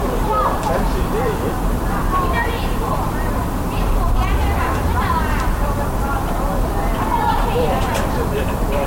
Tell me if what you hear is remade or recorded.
remade